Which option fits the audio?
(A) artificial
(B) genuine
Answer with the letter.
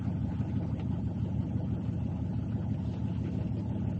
B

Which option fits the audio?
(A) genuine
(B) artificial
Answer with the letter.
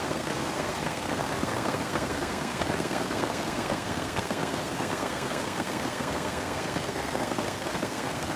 B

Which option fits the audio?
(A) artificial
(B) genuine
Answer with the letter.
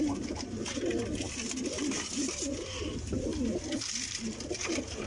B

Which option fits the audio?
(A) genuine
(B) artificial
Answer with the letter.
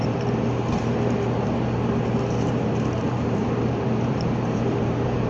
B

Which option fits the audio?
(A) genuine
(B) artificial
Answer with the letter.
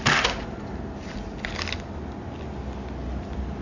A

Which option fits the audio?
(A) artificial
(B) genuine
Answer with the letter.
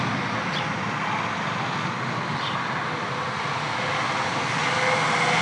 B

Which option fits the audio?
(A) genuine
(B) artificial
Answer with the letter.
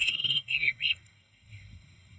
B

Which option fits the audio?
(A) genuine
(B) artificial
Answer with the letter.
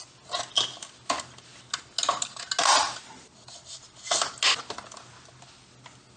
A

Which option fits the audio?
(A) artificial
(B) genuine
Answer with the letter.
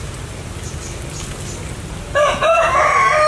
B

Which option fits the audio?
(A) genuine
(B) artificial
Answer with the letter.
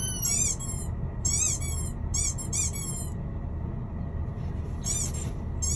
A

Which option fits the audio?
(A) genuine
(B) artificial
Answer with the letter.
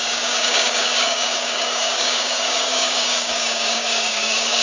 B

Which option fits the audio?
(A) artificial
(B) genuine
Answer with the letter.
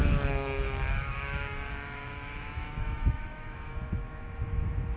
A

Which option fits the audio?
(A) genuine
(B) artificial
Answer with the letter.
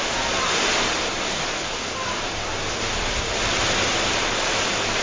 A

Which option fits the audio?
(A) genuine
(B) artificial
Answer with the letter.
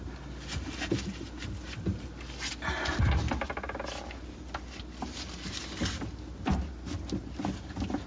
A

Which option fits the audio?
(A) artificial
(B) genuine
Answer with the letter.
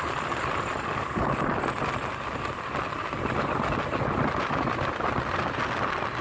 B